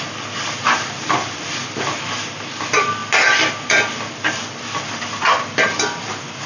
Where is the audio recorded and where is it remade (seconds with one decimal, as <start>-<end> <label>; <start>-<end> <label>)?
0.0-6.5 remade